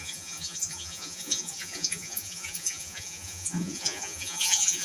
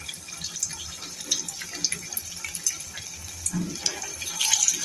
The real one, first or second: second